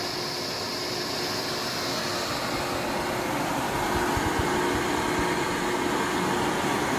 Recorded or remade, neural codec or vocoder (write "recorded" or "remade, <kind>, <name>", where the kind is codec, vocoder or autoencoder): recorded